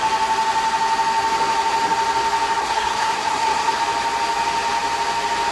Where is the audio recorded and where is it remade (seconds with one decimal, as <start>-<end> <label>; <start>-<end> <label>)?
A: 0.0-2.6 recorded; 2.6-3.8 remade; 3.8-5.5 recorded